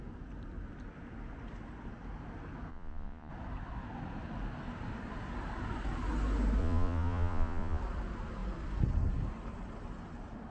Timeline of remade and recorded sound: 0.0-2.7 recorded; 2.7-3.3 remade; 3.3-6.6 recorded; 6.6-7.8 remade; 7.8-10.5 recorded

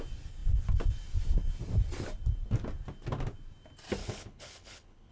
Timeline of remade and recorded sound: 0.0-4.0 recorded; 4.0-5.1 remade

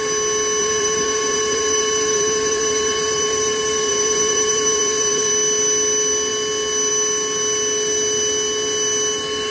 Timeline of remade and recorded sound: 0.0-0.6 recorded; 0.6-5.3 remade; 5.3-9.5 recorded

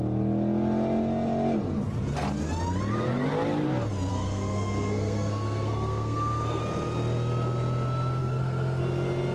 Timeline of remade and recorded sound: 0.0-4.1 recorded; 4.1-6.6 remade; 6.6-8.2 recorded; 8.2-8.8 remade; 8.8-9.3 recorded